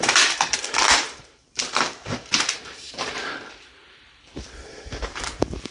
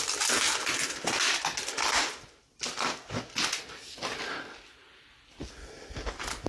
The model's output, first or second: first